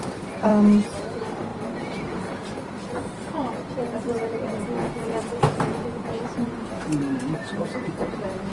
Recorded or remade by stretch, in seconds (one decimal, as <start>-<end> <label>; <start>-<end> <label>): 0.0-0.5 remade; 0.5-1.1 recorded; 1.1-8.5 remade